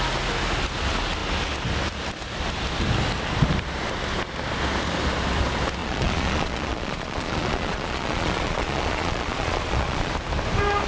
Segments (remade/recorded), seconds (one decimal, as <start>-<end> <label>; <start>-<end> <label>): 0.0-5.8 recorded; 5.8-10.1 remade; 10.1-10.9 recorded